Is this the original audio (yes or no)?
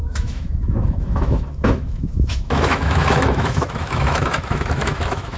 no